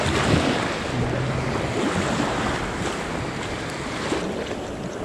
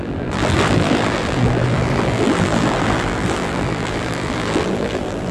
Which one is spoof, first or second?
second